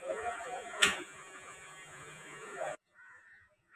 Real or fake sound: fake